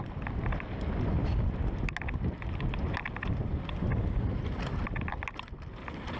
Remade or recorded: recorded